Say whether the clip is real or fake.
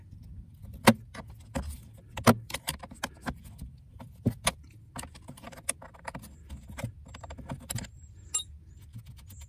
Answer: real